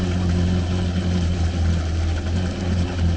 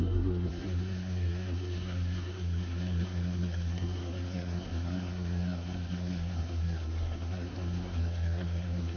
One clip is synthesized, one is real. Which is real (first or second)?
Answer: first